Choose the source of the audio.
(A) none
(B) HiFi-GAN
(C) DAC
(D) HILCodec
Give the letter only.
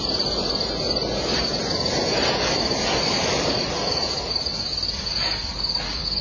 A